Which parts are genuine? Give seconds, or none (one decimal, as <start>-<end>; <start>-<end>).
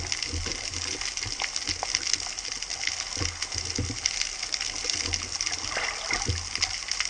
0.0-7.1